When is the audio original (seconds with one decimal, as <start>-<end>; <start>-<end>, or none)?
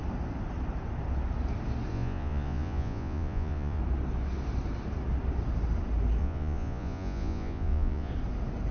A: 0.0-1.9; 3.8-6.2; 8.1-8.7